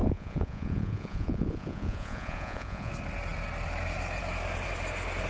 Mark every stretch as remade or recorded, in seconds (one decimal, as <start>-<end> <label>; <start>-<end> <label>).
0.0-2.9 remade; 2.9-5.3 recorded